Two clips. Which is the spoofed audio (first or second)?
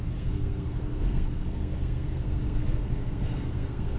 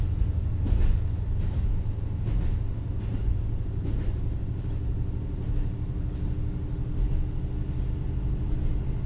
first